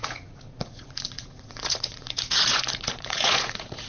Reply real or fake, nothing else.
fake